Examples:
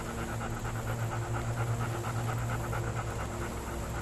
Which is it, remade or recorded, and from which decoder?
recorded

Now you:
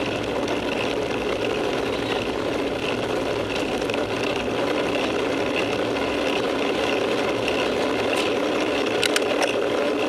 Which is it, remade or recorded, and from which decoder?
recorded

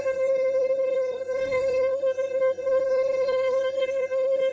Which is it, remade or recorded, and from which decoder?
remade, codec, SNAC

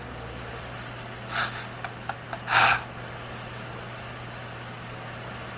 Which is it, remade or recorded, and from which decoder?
recorded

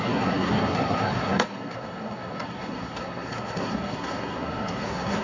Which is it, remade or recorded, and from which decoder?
remade, codec, SNAC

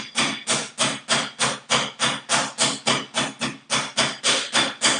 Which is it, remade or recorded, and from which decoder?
recorded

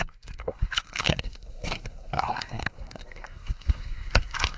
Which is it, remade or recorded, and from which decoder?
remade, codec, SNAC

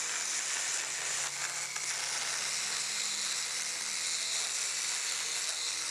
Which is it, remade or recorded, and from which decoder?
recorded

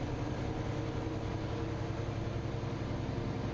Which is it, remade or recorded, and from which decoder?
recorded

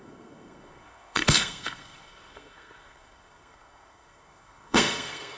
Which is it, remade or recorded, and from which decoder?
remade, codec, SNAC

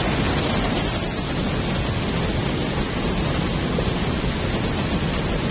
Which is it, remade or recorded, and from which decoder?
recorded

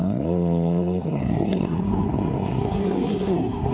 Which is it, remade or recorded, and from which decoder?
remade, codec, SNAC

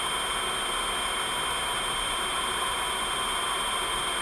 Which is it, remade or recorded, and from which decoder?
recorded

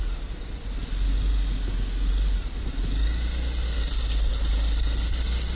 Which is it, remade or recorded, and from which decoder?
recorded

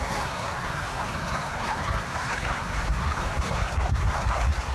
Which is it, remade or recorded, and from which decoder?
remade, codec, SNAC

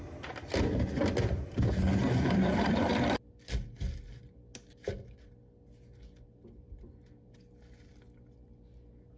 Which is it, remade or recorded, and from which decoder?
recorded